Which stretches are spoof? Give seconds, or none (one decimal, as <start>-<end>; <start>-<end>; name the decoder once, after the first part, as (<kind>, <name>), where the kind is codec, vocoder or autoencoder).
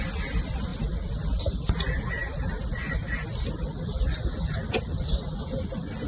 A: none